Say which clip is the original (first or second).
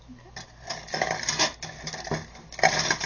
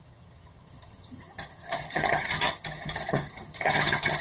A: first